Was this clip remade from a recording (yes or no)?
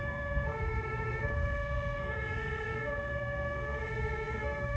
yes